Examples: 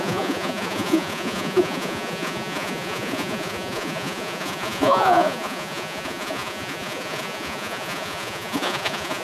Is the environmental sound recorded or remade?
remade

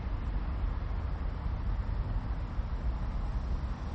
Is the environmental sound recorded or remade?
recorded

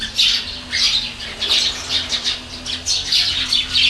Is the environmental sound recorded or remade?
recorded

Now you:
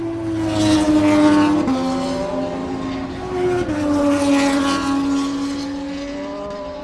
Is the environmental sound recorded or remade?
recorded